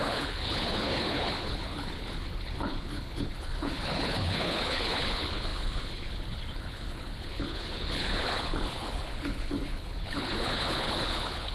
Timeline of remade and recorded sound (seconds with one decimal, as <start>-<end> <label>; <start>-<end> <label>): 0.0-11.5 remade